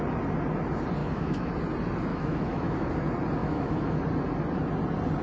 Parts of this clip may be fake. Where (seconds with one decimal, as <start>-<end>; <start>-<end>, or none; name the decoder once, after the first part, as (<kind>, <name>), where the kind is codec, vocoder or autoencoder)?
1.0-1.5 (autoencoder, DAC-VAE); 2.1-2.9; 3.4-4.0